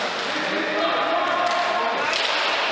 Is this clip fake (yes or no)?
no